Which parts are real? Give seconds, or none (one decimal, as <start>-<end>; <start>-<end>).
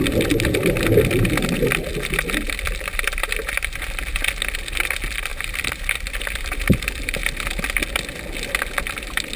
4.1-4.8; 7.2-8.9